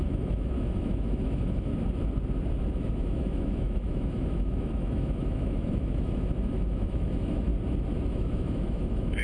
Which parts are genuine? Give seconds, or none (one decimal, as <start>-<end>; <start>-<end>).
1.7-2.7; 7.5-8.1